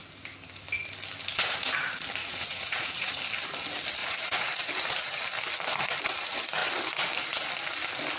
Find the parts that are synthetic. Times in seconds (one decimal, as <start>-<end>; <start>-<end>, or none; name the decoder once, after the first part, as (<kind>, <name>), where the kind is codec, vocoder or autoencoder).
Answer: 2.2-3.2 (vocoder, Vocos); 4.0-4.7